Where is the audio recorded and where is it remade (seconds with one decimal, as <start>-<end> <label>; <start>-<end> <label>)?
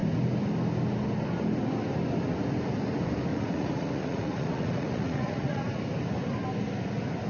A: 0.0-3.3 recorded; 3.3-5.8 remade; 5.8-7.3 recorded